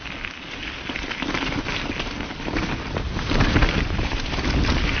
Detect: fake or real real